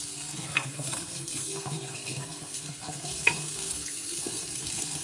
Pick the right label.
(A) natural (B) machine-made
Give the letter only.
B